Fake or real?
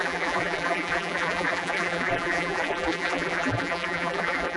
fake